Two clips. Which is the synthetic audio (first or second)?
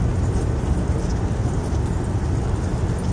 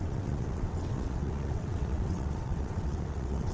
second